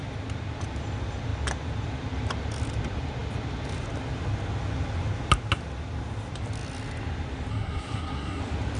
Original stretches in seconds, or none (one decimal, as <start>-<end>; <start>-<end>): 0.0-7.5; 8.4-8.8